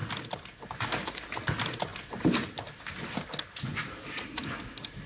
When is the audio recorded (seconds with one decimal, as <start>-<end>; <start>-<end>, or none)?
0.7-1.9; 2.9-3.7; 4.6-5.1